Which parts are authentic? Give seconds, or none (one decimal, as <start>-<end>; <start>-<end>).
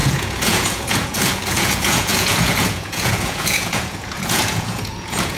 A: none